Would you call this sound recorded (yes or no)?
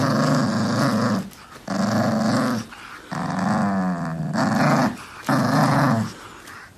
yes